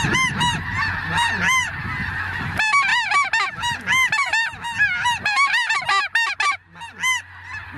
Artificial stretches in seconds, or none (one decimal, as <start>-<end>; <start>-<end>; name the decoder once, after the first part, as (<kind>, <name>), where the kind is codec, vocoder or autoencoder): none

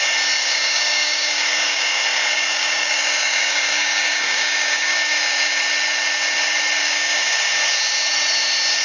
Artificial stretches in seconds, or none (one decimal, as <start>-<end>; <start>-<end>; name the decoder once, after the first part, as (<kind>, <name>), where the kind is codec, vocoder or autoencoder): 0.4-5.6 (codec, DAC); 6.8-7.5

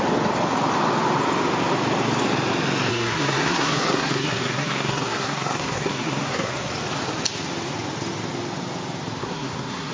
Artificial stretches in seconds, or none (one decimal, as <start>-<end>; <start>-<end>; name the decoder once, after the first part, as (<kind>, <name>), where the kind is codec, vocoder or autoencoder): 2.9-6.7 (codec, SNAC); 9.2-9.9